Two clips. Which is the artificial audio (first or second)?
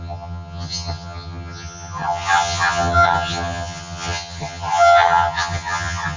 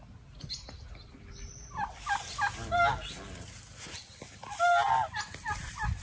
first